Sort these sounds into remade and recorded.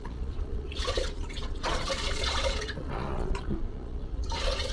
remade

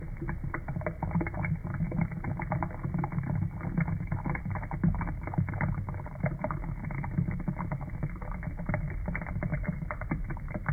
recorded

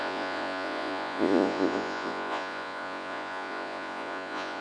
remade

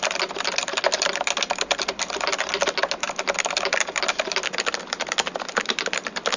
recorded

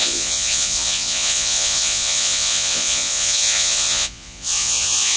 remade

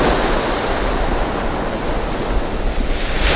recorded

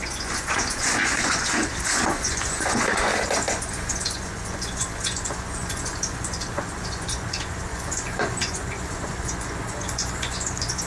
remade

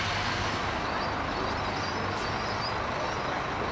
recorded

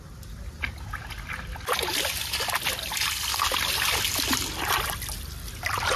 recorded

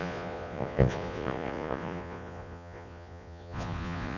remade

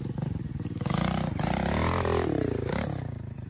recorded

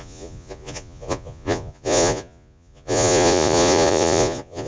remade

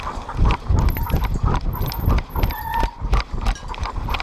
recorded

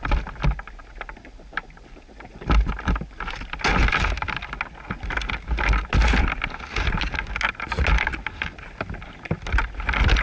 recorded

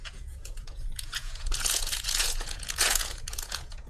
remade